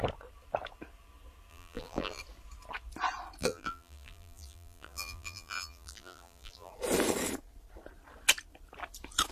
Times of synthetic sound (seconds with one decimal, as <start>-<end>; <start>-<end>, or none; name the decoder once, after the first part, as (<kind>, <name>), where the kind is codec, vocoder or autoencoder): 1.5-2.2 (vocoder, BigVGAN v2); 3.4-6.7